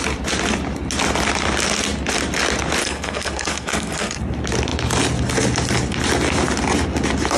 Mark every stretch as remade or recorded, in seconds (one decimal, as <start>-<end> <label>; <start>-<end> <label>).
0.0-2.8 recorded; 2.8-4.2 remade; 4.2-7.4 recorded